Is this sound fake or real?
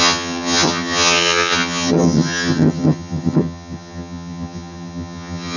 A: fake